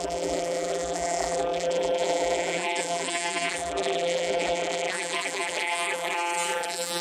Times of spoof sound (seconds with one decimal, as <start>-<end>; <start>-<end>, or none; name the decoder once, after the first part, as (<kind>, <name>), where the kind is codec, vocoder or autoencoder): 0.0-7.0 (vocoder, BigVGAN v2)